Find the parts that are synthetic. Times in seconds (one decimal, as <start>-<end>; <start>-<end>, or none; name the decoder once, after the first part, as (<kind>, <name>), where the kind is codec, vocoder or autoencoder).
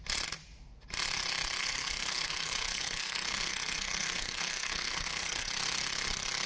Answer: 1.6-5.5 (codec, SNAC)